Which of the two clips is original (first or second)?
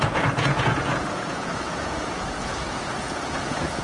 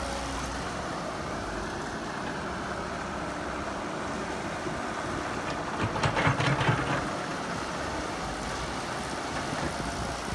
second